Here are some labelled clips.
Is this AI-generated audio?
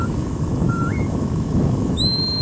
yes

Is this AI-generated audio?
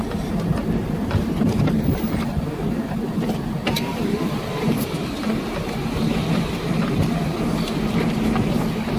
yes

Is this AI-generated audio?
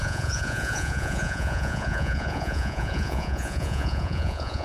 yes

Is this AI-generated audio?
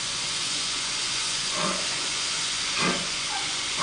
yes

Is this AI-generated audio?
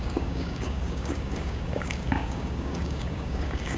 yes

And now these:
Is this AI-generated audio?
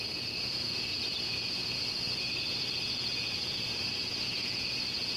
yes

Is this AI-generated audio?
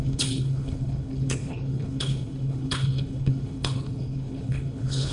yes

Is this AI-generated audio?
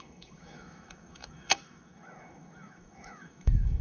yes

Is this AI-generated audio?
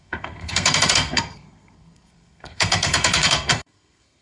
yes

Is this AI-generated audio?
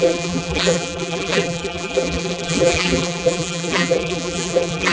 yes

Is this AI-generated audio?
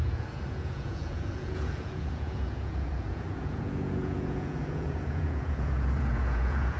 yes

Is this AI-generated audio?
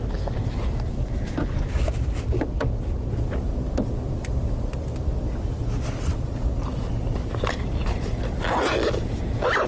no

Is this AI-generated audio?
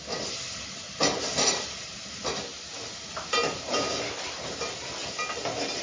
no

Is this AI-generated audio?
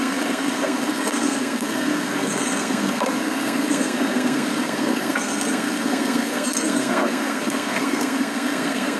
yes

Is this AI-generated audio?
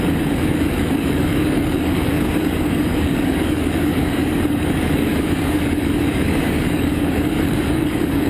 yes